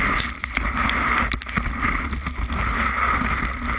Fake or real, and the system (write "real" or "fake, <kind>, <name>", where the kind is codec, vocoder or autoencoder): real